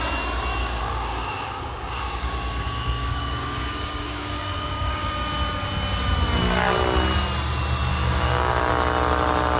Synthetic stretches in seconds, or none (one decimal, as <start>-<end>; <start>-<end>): 0.6-5.1; 7.9-8.7